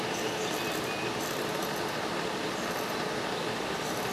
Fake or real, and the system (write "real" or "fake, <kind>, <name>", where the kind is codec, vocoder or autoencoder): real